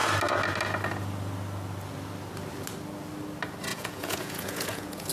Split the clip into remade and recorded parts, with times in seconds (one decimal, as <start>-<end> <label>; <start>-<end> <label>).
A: 0.0-3.7 recorded; 3.7-5.1 remade